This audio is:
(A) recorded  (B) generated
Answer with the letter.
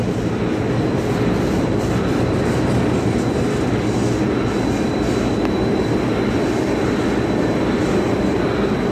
A